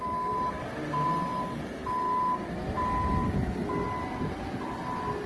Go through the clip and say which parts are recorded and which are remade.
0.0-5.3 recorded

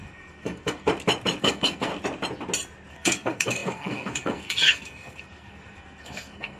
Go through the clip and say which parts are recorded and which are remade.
0.0-0.9 remade; 0.9-1.4 recorded; 1.4-1.9 remade; 1.9-2.9 recorded; 2.9-6.6 remade

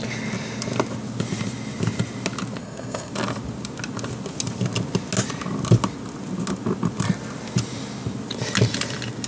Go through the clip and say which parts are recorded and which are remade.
0.0-2.6 recorded; 2.6-3.1 remade; 3.1-9.3 recorded

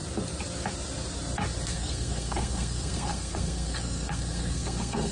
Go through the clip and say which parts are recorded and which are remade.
0.0-1.7 recorded; 1.7-5.1 remade

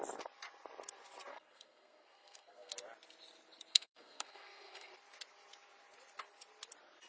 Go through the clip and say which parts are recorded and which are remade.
0.0-1.3 recorded; 1.3-2.7 remade; 2.7-3.7 recorded; 3.7-4.9 remade; 4.9-7.1 recorded

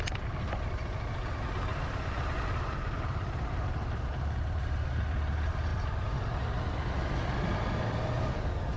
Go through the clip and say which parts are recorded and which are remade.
0.0-8.8 recorded

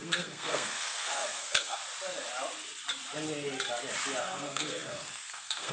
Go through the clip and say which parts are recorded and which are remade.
0.0-1.8 remade; 1.8-4.2 recorded; 4.2-5.7 remade